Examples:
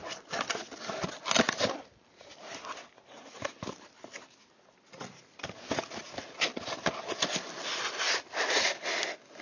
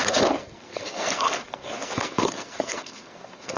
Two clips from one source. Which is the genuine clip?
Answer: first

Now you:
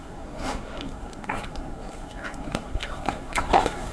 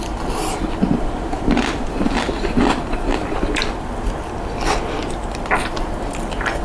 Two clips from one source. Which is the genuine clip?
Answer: second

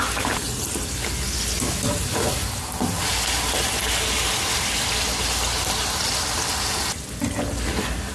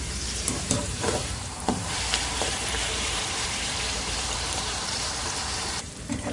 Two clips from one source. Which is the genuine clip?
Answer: first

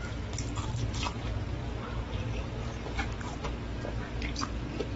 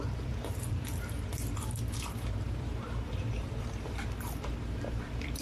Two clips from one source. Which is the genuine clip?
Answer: first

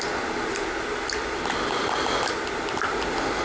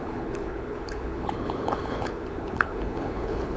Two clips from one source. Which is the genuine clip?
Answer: first